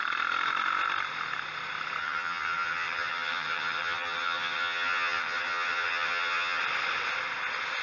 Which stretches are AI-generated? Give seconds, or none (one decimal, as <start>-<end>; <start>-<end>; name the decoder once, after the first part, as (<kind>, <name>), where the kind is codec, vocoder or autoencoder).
2.0-6.6 (vocoder, HiFi-GAN)